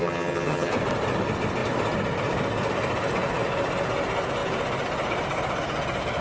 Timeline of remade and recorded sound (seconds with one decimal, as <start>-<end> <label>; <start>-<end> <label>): 0.0-0.7 remade; 0.7-6.2 recorded